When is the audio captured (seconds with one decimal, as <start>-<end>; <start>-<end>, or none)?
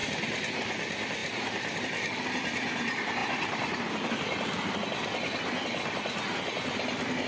0.0-1.2; 1.8-3.2; 4.1-7.3